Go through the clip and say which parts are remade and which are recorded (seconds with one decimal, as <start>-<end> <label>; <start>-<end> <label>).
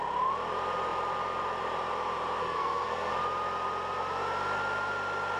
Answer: 0.0-2.4 recorded; 2.4-3.1 remade; 3.1-5.4 recorded